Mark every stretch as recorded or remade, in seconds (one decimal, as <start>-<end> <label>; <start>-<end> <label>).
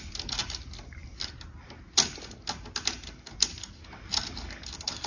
0.0-5.1 recorded